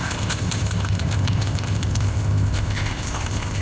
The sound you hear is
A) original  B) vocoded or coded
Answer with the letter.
B